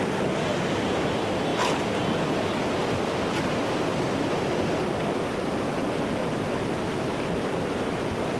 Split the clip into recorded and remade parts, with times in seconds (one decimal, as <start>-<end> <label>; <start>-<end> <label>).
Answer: 0.0-6.2 recorded; 6.2-8.4 remade